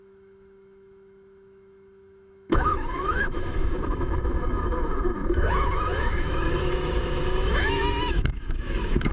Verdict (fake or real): fake